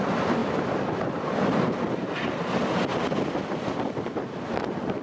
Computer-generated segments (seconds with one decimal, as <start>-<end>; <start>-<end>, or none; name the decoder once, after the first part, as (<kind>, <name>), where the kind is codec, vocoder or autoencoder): 0.4-1.9 (vocoder, BigVGAN v2); 2.9-4.1